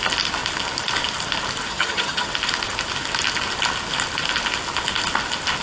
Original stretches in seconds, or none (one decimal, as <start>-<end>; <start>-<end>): 0.0-1.7; 2.3-5.6